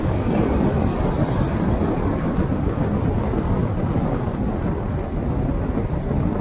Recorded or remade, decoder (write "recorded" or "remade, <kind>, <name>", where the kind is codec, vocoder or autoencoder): recorded